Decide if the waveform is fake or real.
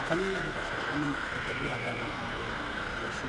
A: fake